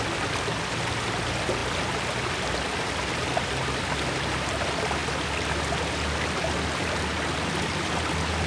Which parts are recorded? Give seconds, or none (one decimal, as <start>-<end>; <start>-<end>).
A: 0.0-8.5